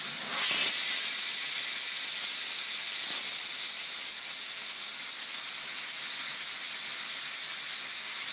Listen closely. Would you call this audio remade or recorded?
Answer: recorded